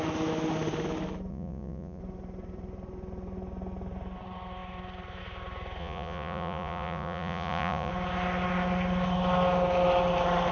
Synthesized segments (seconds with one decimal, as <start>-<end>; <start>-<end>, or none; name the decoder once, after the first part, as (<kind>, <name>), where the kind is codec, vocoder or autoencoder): 1.3-2.0 (vocoder, Vocos); 5.8-7.9